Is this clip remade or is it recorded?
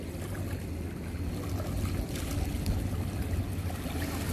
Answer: recorded